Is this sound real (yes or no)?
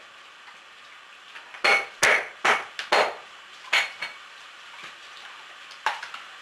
yes